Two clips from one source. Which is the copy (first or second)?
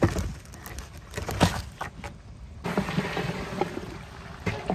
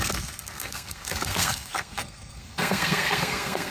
second